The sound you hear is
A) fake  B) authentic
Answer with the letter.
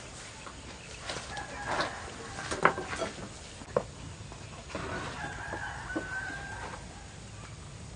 B